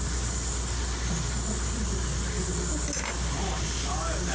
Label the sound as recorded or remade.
recorded